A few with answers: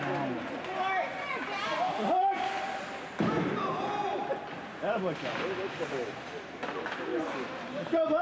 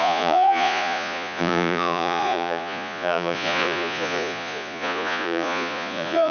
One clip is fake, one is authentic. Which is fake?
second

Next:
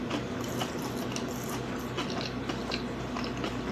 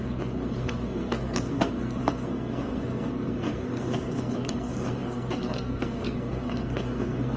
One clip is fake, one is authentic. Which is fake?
second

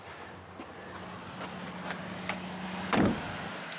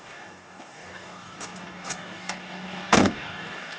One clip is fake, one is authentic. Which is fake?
second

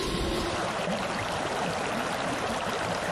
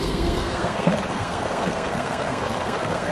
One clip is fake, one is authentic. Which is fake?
second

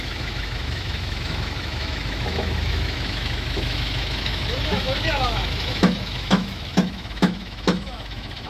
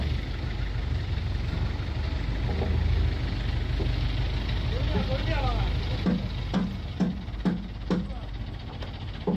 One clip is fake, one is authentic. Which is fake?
first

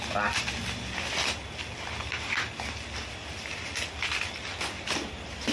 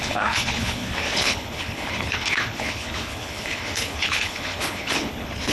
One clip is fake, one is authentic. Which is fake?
second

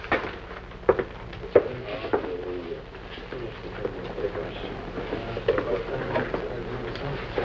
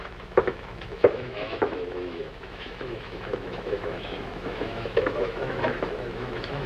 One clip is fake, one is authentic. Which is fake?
second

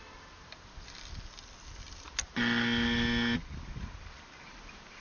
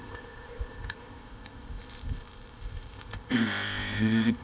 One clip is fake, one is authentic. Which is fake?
second